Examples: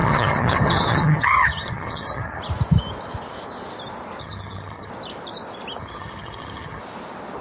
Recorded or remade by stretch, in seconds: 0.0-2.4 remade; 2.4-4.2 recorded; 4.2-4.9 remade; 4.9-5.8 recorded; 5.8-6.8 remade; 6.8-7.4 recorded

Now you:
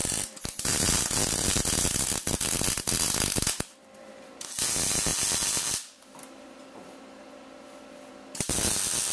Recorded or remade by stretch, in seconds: 0.0-9.1 recorded